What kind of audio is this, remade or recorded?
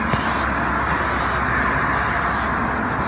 recorded